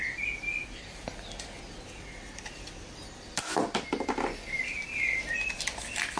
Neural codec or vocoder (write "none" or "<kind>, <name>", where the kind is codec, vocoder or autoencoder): none